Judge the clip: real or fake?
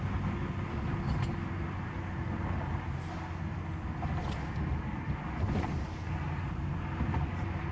real